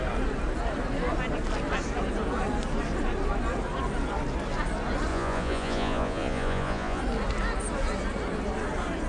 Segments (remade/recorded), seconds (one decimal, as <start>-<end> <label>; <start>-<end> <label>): 0.0-5.1 recorded; 5.1-7.0 remade; 7.0-9.1 recorded